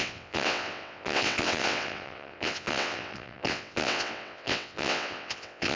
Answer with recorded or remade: remade